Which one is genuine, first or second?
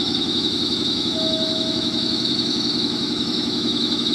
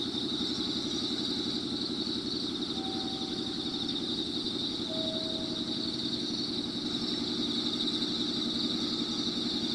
second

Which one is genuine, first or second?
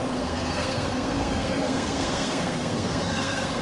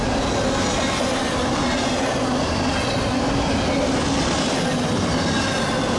second